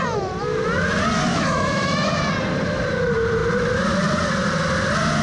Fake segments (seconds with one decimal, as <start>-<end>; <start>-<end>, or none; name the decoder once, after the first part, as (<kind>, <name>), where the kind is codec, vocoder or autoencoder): 1.3-2.1 (autoencoder, DAC-VAE)